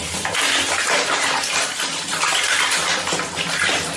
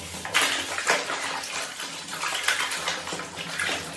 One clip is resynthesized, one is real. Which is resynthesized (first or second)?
first